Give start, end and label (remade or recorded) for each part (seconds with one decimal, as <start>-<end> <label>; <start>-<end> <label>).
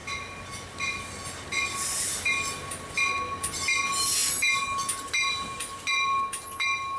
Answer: 0.0-7.0 recorded